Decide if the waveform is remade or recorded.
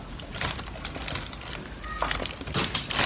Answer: recorded